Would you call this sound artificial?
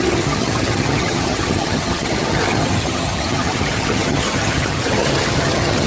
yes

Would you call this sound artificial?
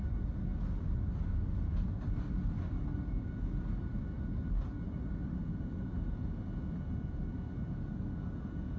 no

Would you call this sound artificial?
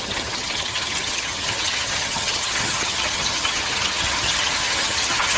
yes